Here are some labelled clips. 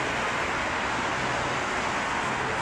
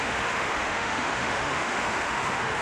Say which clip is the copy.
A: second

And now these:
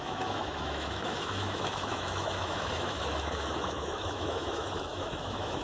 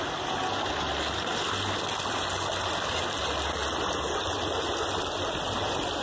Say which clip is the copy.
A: first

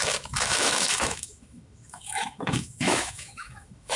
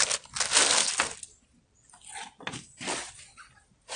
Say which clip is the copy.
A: first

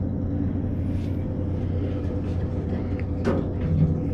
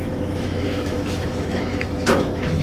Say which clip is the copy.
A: second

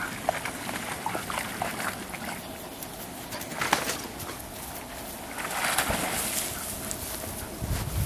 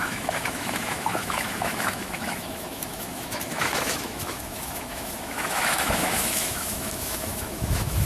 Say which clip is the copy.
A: second